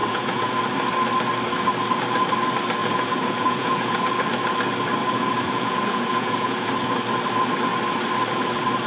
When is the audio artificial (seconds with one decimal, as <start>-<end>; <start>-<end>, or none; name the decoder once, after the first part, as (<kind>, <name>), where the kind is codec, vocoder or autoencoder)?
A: 0.0-0.5 (vocoder, Vocos); 2.8-4.0; 5.0-6.7